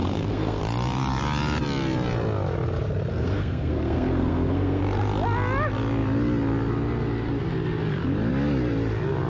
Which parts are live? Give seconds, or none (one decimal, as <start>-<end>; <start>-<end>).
0.6-3.1; 4.8-9.3